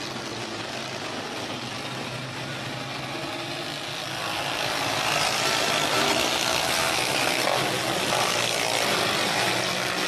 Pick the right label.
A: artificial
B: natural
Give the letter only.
B